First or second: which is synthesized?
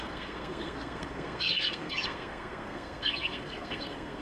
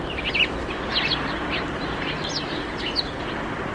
first